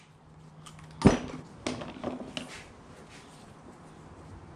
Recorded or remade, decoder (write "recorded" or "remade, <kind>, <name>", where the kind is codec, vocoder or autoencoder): recorded